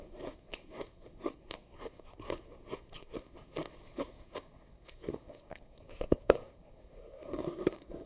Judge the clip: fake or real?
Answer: fake